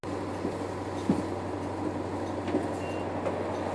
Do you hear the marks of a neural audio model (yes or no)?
no